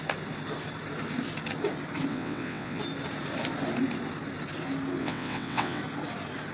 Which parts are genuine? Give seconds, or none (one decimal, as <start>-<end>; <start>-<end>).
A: 0.0-2.1; 2.8-5.0; 5.8-6.5